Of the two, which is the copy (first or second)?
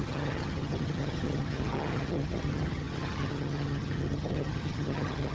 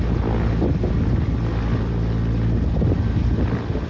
first